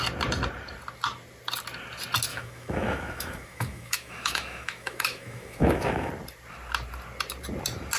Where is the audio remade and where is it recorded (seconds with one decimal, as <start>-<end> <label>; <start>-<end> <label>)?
0.0-2.3 recorded; 2.3-6.1 remade; 6.1-8.0 recorded